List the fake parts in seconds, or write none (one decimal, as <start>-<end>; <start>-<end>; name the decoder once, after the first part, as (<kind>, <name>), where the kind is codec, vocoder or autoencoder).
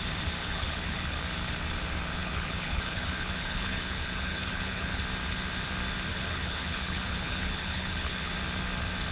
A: 0.4-1.2 (codec, HILCodec); 2.2-5.0; 6.1-8.3